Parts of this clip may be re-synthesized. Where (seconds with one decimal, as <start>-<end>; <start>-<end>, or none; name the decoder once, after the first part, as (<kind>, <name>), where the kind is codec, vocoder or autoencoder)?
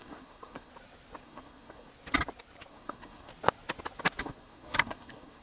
0.0-0.7 (codec, SNAC); 1.2-1.9; 2.7-3.3; 4.2-5.4